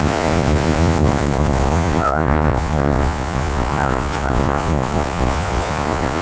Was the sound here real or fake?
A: fake